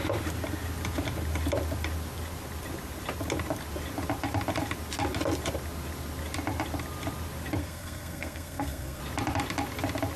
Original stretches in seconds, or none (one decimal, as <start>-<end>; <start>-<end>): 0.0-7.6; 9.0-10.2